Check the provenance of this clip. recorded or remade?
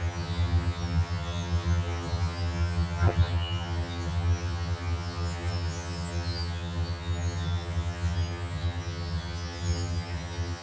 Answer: remade